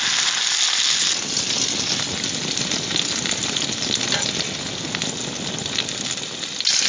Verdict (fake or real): real